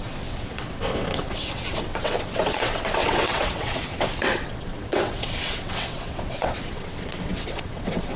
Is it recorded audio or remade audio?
remade